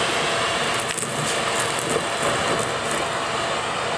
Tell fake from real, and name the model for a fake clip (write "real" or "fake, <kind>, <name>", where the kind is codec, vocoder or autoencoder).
real